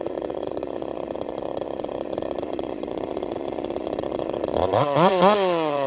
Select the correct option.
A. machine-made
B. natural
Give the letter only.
A